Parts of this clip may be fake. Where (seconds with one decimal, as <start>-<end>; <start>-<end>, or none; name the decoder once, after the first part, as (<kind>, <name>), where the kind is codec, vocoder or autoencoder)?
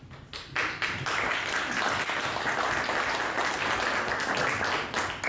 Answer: none